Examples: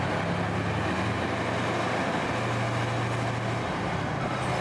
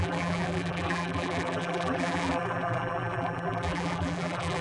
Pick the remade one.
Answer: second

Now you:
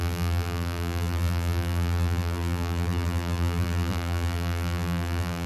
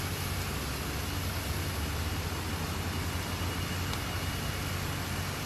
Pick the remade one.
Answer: first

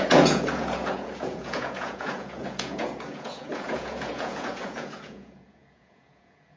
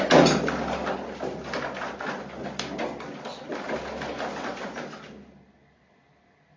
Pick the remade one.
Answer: first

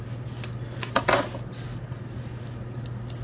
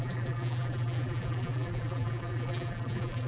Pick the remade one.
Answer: second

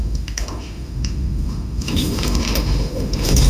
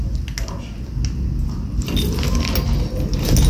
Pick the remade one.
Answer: first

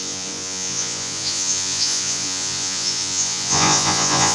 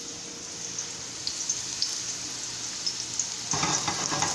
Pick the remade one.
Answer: first